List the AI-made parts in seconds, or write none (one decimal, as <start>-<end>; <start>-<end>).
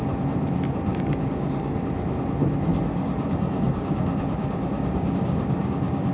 0.9-1.8; 2.7-6.1